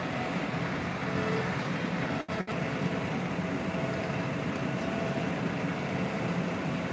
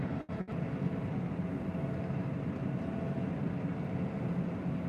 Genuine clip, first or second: second